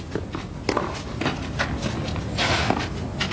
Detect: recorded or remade recorded